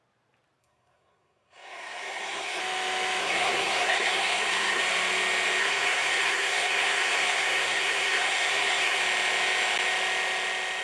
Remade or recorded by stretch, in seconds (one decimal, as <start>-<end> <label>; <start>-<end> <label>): 0.0-0.6 recorded; 0.6-2.6 remade; 2.6-3.2 recorded; 3.2-4.8 remade; 4.8-5.6 recorded; 5.6-9.0 remade; 9.0-10.8 recorded